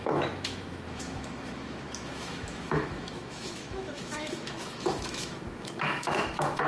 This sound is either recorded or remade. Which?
remade